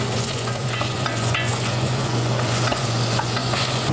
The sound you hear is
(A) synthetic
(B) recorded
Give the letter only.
A